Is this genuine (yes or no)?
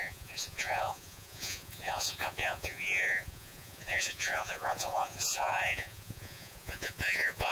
no